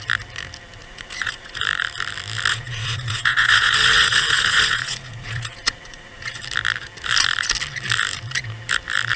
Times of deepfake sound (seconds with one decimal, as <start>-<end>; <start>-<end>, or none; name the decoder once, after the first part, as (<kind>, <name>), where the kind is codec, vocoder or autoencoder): 0.8-1.6 (vocoder, Vocos); 2.5-6.4